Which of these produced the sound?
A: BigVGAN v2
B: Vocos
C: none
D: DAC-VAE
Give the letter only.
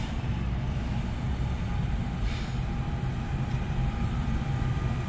A